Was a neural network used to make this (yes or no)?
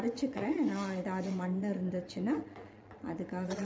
yes